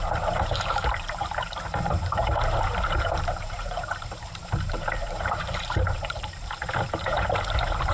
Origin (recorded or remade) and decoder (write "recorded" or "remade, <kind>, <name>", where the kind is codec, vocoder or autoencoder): remade, vocoder, BigVGAN v2